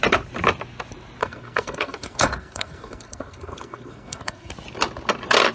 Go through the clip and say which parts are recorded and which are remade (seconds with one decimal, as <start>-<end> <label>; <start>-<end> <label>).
0.0-1.2 recorded; 1.2-4.5 remade; 4.5-5.5 recorded